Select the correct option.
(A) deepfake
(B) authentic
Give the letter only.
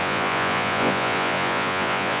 A